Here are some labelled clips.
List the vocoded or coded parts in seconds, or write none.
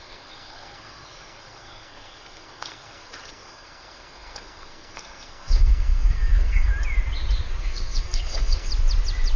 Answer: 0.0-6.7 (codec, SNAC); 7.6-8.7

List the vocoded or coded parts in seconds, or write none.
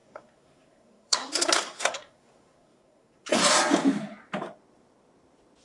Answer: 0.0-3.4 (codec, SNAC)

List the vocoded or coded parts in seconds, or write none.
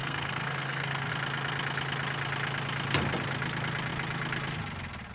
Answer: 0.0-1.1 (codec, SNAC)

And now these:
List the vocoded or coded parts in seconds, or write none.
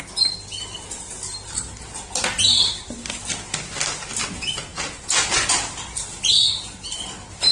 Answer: none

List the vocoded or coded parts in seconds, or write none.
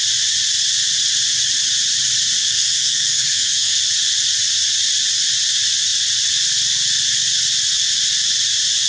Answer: 2.5-3.8 (codec, SNAC)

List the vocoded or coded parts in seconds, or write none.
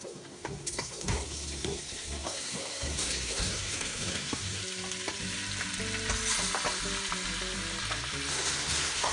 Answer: 0.0-4.6 (codec, SNAC); 8.3-9.1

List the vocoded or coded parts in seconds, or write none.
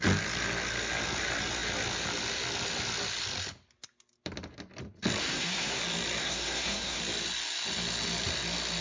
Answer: 5.2-5.8 (codec, SNAC); 6.2-7.0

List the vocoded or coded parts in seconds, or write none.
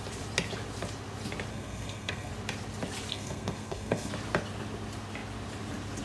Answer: 1.5-2.3 (codec, SNAC); 3.1-4.1